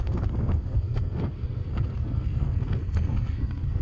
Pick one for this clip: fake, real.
fake